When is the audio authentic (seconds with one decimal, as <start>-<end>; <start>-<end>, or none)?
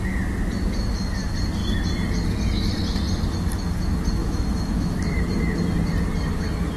0.0-4.2; 5.0-6.8